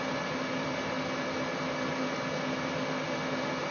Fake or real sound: real